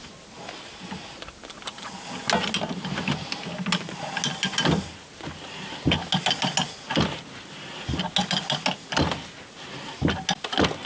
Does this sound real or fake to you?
real